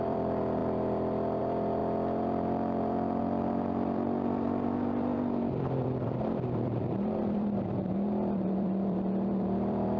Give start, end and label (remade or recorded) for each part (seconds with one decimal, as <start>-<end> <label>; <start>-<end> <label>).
0.0-0.6 remade; 0.6-1.4 recorded; 1.4-1.8 remade; 1.8-3.2 recorded; 3.2-10.0 remade